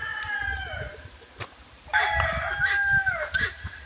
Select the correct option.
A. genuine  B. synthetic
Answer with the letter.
B